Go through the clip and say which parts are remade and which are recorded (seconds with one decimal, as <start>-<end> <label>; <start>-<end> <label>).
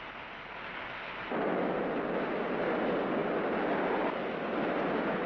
0.0-5.3 recorded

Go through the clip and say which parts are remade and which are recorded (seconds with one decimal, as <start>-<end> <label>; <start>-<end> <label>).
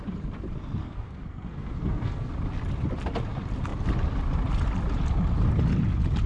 0.0-0.8 recorded; 0.8-2.3 remade; 2.3-6.3 recorded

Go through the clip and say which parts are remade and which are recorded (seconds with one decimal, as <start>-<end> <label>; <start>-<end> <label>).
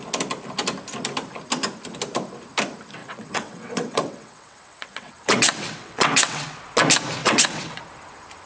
0.0-3.0 recorded; 3.0-6.6 remade; 6.6-7.2 recorded; 7.2-7.8 remade; 7.8-8.5 recorded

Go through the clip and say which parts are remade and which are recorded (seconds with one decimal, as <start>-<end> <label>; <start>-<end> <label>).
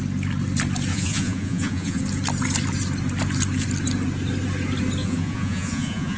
0.0-0.9 recorded; 0.9-2.0 remade; 2.0-5.0 recorded; 5.0-6.2 remade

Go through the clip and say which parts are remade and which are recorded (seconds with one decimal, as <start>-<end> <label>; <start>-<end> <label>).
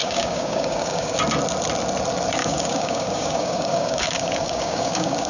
0.0-1.2 remade; 1.2-2.4 recorded; 2.4-5.3 remade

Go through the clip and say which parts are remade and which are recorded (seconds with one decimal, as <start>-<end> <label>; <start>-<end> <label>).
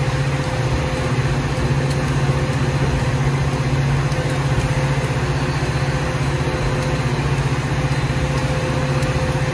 0.0-9.5 recorded